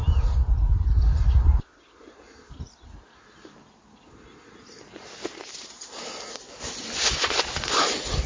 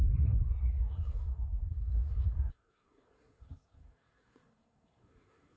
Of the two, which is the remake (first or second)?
second